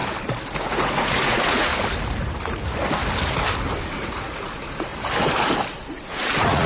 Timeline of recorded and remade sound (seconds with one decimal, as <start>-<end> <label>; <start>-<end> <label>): 0.0-0.6 recorded; 0.6-1.7 remade; 1.7-3.8 recorded; 3.8-4.9 remade; 4.9-5.7 recorded; 5.7-6.7 remade